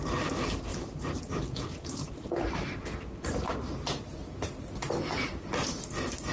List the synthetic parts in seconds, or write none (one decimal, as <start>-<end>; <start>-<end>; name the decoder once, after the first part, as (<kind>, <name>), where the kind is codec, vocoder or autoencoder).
0.7-1.2 (vocoder, BigVGAN v2); 2.0-2.7